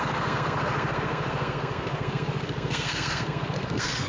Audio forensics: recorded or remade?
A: remade